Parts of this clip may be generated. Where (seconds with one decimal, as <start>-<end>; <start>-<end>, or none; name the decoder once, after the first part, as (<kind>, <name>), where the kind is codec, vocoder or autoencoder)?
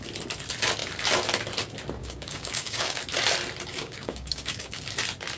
2.0-3.0 (codec, DAC); 3.7-4.8